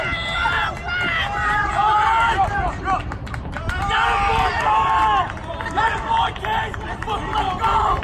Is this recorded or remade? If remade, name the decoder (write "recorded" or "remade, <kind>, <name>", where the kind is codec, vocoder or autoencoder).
recorded